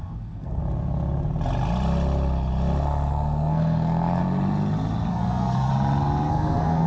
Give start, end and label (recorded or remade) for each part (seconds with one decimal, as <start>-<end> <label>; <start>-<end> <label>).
0.0-0.6 remade; 0.6-3.1 recorded; 3.1-4.2 remade; 4.2-5.1 recorded; 5.1-5.7 remade; 5.7-6.3 recorded; 6.3-6.9 remade